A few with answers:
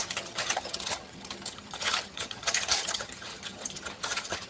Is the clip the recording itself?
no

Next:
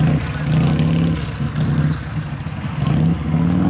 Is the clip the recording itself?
yes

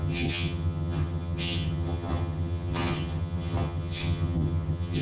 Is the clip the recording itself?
no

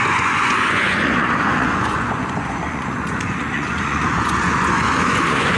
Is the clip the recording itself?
no